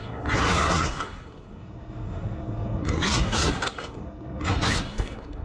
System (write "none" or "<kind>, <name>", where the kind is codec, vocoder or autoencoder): codec, SNAC